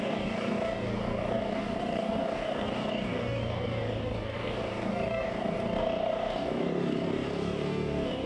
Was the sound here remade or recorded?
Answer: remade